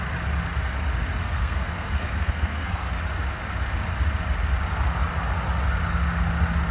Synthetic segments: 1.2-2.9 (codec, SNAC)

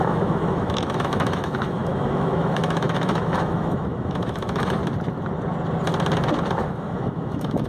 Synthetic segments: 0.0-4.8 (autoencoder, DAC-VAE); 6.6-7.7

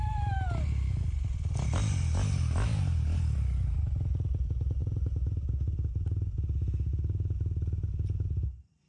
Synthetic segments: none